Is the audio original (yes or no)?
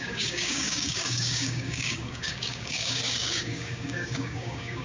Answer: no